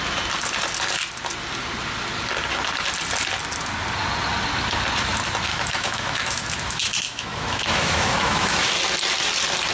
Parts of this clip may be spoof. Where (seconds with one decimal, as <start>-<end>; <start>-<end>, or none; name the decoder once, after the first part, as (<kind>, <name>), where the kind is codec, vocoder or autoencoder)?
5.5-8.7 (autoencoder, DAC-VAE)